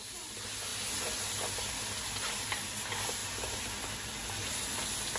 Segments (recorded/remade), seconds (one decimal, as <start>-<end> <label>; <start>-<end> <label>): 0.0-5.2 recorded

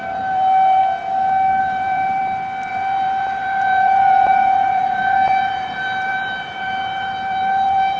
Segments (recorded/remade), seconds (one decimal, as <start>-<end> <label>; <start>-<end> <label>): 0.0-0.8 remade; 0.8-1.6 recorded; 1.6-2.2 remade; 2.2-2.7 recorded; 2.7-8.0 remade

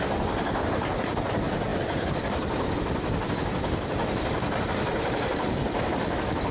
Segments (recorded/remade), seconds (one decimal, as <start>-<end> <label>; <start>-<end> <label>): 0.0-6.5 recorded

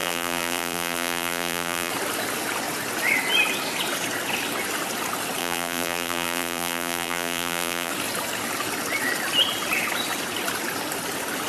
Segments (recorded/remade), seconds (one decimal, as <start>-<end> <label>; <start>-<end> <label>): 0.0-1.9 remade; 1.9-5.4 recorded; 5.4-7.9 remade; 7.9-11.5 recorded

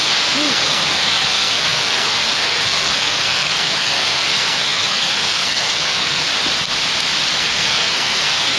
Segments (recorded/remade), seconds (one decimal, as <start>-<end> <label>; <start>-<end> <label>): 0.0-6.3 remade; 6.3-7.4 recorded; 7.4-8.6 remade

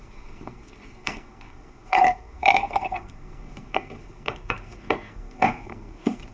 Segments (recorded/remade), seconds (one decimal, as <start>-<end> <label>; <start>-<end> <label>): 0.0-6.3 remade

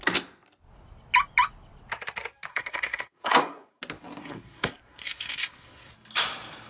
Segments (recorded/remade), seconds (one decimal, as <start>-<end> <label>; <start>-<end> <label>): 0.0-2.5 recorded; 2.5-3.8 remade; 3.8-4.2 recorded; 4.2-5.9 remade; 5.9-6.7 recorded

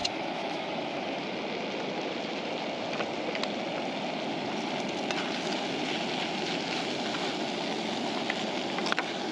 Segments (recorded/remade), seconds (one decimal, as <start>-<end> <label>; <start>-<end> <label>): 0.0-1.0 remade; 1.0-9.3 recorded